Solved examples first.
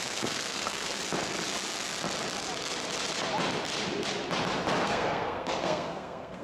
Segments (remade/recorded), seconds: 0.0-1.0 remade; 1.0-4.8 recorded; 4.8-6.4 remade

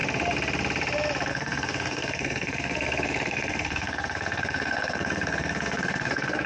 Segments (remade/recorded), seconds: 0.0-1.3 recorded; 1.3-6.5 remade

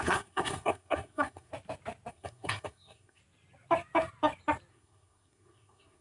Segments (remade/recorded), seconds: 0.0-1.5 remade; 1.5-2.1 recorded; 2.1-3.2 remade; 3.2-4.7 recorded; 4.7-6.0 remade

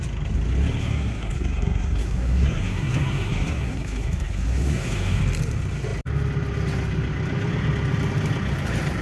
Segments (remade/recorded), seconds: 0.0-0.8 recorded; 0.8-5.2 remade; 5.2-9.0 recorded

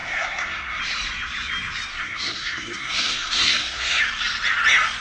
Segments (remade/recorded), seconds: 0.0-0.8 remade; 0.8-1.9 recorded; 1.9-4.0 remade; 4.0-5.0 recorded

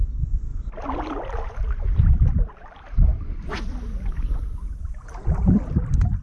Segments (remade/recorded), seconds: 0.0-6.2 recorded

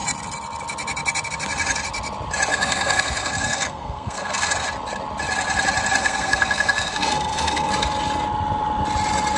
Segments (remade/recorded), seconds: 0.0-2.5 recorded; 2.5-4.5 remade; 4.5-6.0 recorded; 6.0-7.7 remade; 7.7-9.4 recorded